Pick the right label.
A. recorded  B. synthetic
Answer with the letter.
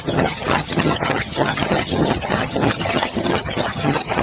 B